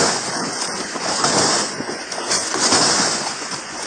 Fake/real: fake